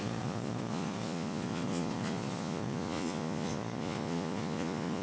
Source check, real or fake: fake